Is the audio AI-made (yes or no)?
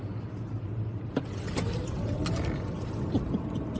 no